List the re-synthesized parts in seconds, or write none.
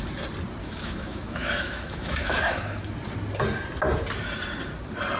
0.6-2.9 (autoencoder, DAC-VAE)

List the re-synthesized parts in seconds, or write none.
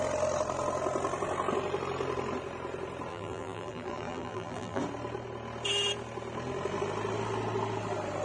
3.1-4.8 (vocoder, BigVGAN v2)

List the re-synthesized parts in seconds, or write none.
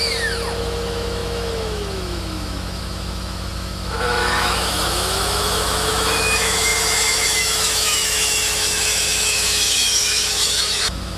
0.6-11.2 (autoencoder, DAC-VAE)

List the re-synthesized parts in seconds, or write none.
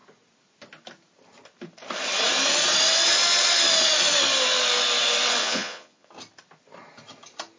5.4-6.1 (vocoder, Vocos)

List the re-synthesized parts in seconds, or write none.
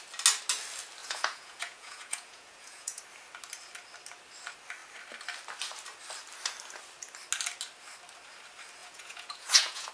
1.0-3.0 (vocoder, Vocos); 8.8-9.9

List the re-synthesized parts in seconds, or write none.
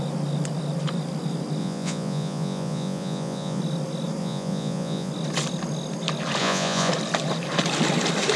1.6-3.6 (vocoder, Vocos); 4.2-5.1; 6.4-6.9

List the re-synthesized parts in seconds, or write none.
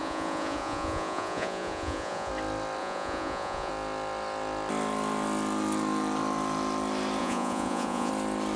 0.0-2.3 (vocoder, Vocos); 2.8-3.7; 7.2-8.1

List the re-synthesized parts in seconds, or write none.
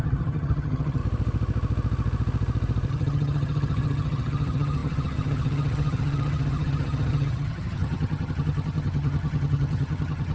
0.0-1.0 (vocoder, HiFi-GAN); 2.9-10.3